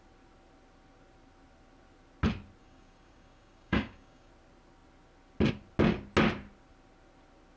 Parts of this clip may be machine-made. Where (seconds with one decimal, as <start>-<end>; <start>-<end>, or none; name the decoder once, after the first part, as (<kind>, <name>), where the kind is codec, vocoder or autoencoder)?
2.6-4.3 (codec, DAC)